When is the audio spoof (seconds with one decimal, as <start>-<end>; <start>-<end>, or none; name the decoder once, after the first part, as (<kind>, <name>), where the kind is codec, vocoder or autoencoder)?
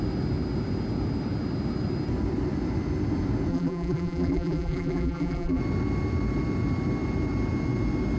3.5-5.6 (vocoder, BigVGAN v2)